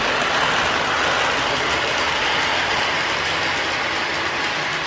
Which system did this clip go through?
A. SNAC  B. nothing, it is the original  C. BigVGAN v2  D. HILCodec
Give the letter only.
B